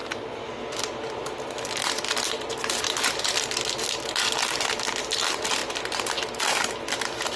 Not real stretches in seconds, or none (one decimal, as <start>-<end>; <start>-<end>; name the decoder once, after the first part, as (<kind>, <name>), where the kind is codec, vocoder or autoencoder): none